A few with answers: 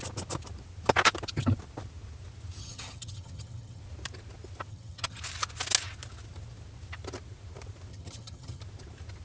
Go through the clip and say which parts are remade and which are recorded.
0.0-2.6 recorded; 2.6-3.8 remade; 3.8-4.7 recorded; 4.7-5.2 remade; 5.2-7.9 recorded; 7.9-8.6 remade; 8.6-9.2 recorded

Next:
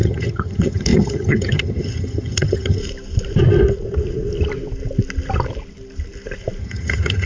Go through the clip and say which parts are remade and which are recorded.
0.0-2.8 remade; 2.8-6.6 recorded; 6.6-7.3 remade

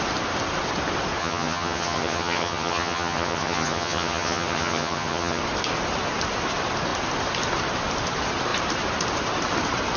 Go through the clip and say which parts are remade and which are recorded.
0.0-1.2 recorded; 1.2-5.4 remade; 5.4-10.0 recorded

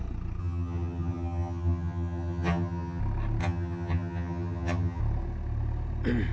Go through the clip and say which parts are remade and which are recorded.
0.0-0.4 recorded; 0.4-3.0 remade; 3.0-3.4 recorded; 3.4-5.0 remade; 5.0-6.3 recorded

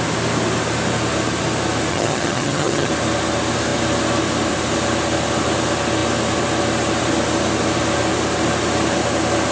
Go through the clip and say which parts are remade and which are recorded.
0.0-1.9 recorded; 1.9-2.9 remade; 2.9-9.5 recorded

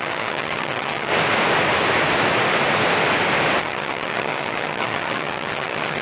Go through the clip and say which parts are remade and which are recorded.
0.0-1.1 remade; 1.1-3.6 recorded; 3.6-6.0 remade

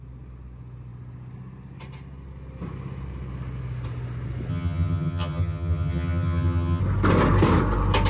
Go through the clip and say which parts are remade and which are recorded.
0.0-4.5 recorded; 4.5-6.8 remade; 6.8-8.1 recorded

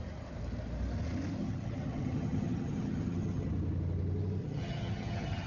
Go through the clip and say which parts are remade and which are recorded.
0.0-1.4 recorded; 1.4-3.5 remade; 3.5-4.4 recorded; 4.4-5.5 remade